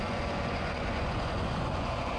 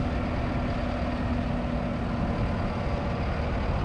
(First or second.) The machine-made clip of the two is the first